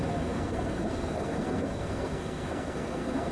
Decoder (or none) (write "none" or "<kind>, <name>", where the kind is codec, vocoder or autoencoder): codec, SNAC